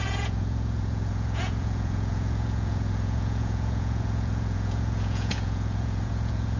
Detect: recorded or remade remade